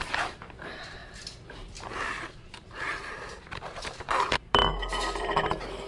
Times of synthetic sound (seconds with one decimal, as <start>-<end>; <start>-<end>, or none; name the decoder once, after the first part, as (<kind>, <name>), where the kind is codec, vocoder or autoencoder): 0.0-4.6 (vocoder, BigVGAN v2); 5.2-5.9